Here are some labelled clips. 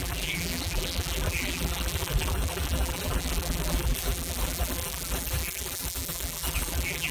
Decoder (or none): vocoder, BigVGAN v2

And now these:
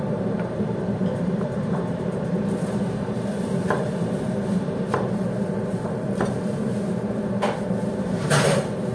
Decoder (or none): vocoder, BigVGAN v2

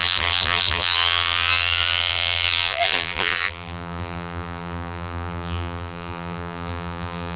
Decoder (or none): vocoder, BigVGAN v2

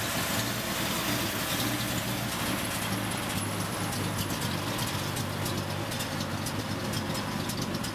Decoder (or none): none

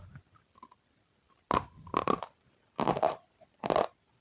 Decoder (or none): vocoder, BigVGAN v2